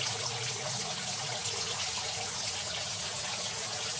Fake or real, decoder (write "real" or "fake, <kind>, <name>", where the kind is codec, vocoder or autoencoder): fake, vocoder, Vocos